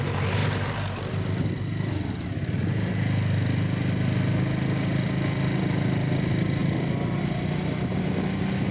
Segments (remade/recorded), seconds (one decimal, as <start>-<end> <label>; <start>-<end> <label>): 0.0-6.6 recorded; 6.6-7.2 remade; 7.2-8.7 recorded